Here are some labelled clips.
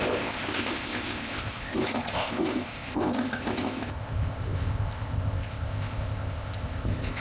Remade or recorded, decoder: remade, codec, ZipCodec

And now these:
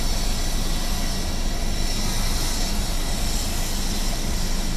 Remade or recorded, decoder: recorded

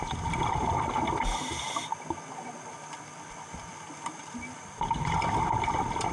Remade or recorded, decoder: recorded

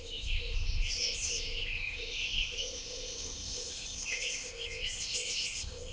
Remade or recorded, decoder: remade, codec, ZipCodec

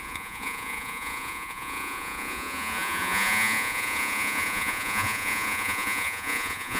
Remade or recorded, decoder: remade, vocoder, Vocos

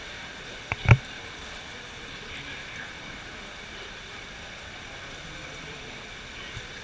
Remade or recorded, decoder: remade, vocoder, BigVGAN v2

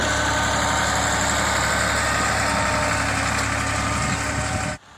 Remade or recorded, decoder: recorded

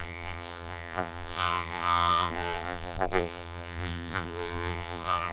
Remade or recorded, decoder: remade, vocoder, BigVGAN v2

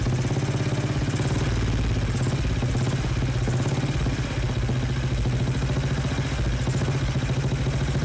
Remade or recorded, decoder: recorded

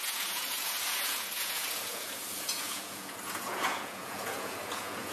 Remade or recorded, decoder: remade, vocoder, Vocos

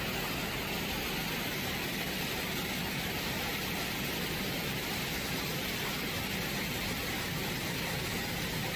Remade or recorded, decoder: recorded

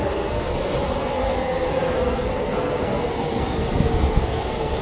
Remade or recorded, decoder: remade, codec, SNAC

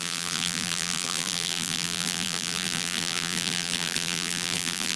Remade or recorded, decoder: remade, vocoder, BigVGAN v2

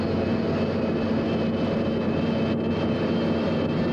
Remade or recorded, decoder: recorded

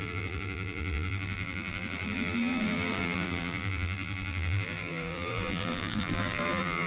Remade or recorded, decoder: remade, vocoder, BigVGAN v2